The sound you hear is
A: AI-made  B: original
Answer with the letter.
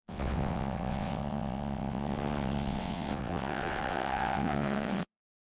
A